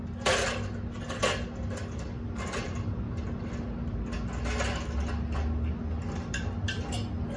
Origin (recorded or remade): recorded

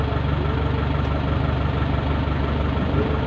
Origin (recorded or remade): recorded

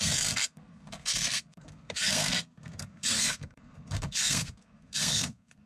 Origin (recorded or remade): remade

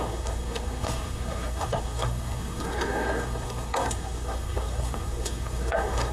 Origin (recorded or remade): remade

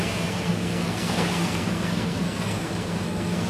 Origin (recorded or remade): remade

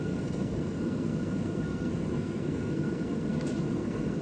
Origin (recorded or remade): remade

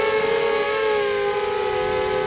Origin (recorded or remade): recorded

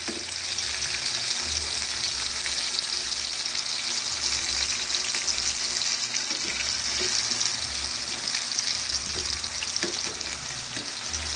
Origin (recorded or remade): recorded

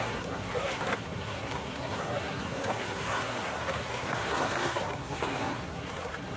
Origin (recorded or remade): remade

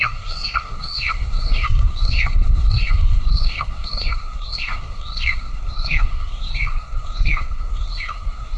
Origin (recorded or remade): remade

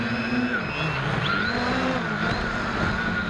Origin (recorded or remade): recorded